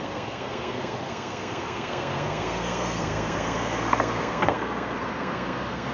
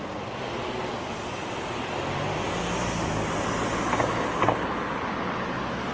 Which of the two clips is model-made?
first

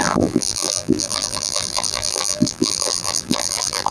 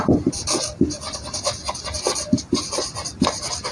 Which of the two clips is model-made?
first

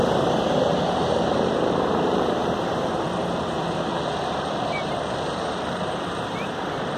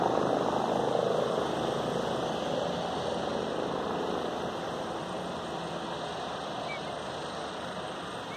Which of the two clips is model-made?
first